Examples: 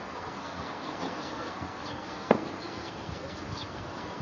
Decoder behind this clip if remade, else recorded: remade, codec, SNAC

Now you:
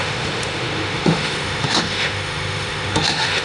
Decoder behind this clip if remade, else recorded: remade, autoencoder, DAC-VAE